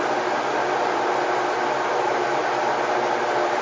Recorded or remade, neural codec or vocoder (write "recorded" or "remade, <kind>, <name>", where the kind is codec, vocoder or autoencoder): recorded